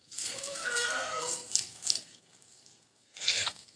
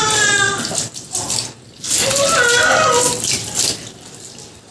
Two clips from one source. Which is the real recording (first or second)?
second